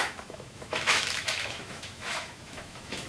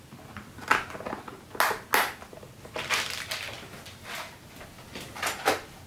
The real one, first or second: second